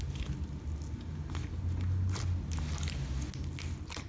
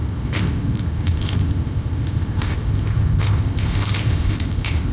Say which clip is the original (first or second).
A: first